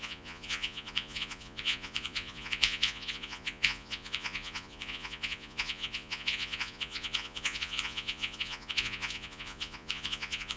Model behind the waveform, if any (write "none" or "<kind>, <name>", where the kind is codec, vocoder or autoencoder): vocoder, Vocos